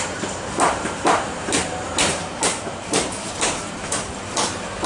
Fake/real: fake